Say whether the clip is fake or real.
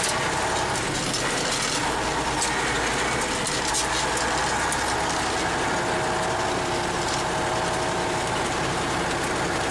real